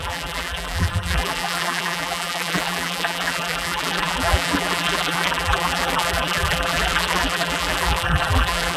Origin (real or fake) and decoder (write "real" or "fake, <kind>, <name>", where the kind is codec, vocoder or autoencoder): fake, vocoder, BigVGAN v2